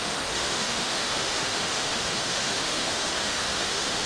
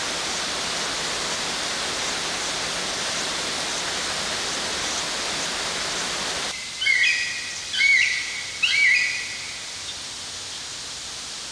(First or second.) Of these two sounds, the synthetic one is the first